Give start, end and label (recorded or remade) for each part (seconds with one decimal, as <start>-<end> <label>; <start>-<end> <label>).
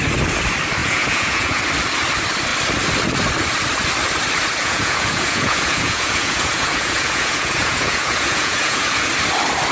0.0-0.8 recorded; 0.8-1.6 remade; 1.6-4.6 recorded; 4.6-9.1 remade; 9.1-9.7 recorded